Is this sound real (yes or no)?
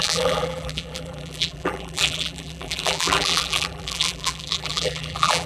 no